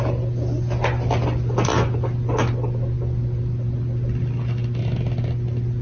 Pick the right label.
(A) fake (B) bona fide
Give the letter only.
B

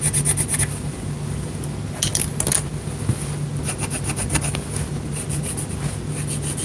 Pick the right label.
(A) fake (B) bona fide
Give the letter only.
B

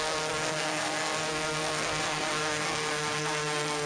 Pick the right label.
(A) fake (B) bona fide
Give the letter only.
A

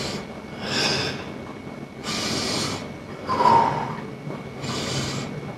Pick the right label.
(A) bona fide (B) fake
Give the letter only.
A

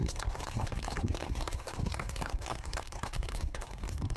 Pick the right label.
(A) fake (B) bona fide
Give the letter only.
A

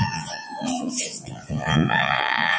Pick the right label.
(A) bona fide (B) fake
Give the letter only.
B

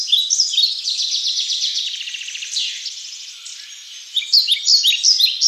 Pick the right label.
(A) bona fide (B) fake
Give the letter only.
A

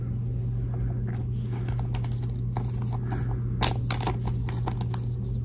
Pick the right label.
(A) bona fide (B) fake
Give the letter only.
A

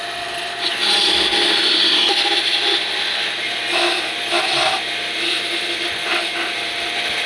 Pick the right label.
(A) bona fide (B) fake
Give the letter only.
A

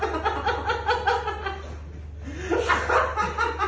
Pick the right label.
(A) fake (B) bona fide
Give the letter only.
B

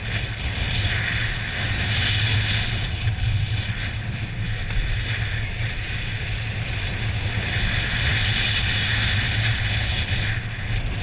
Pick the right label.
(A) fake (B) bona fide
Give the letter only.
B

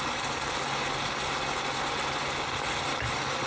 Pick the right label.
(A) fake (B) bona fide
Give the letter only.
B